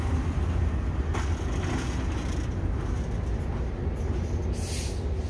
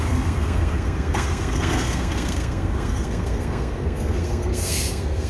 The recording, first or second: first